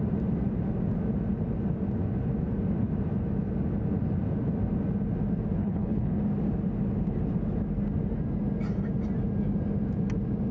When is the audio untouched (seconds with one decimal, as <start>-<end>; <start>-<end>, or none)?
0.0-5.6; 6.2-10.5